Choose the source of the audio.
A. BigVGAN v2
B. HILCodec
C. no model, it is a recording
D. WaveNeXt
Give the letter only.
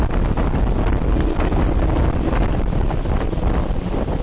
C